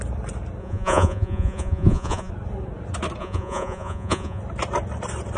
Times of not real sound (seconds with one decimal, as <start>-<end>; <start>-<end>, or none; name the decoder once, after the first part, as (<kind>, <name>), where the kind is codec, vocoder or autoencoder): 0.6-2.3 (vocoder, Vocos); 3.2-4.4